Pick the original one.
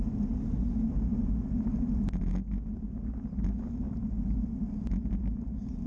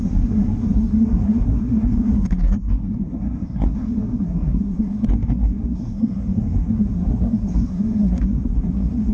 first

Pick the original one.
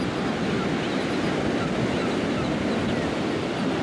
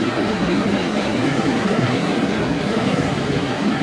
first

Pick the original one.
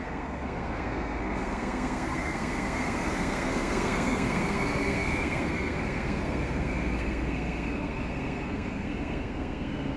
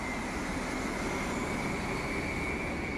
second